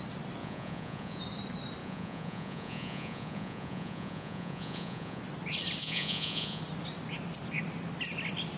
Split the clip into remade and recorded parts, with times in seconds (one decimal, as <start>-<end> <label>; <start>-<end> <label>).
0.0-0.4 recorded; 0.4-1.2 remade; 1.2-1.8 recorded; 1.8-5.2 remade; 5.2-5.8 recorded; 5.8-6.6 remade; 6.6-8.6 recorded